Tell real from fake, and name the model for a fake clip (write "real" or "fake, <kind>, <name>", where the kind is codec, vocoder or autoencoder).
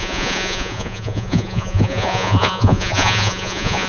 fake, vocoder, Vocos